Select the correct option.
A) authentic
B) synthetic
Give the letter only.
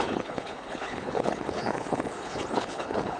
B